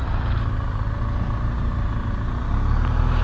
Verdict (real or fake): real